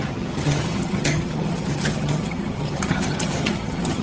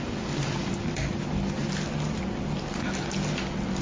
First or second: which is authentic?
second